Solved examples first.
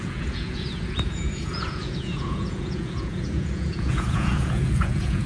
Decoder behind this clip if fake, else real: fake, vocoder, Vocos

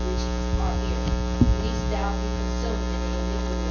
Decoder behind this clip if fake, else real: real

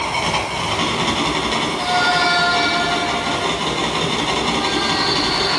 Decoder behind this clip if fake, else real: real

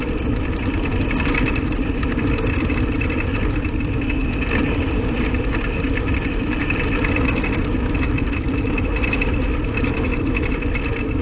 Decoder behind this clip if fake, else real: fake, vocoder, BigVGAN v2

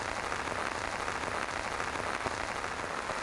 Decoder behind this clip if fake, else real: real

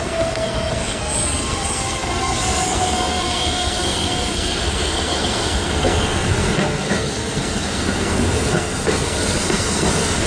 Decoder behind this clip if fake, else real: fake, codec, SNAC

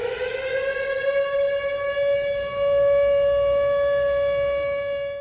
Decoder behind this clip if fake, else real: real